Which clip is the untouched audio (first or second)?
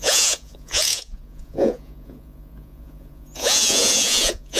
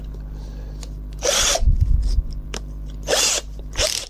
second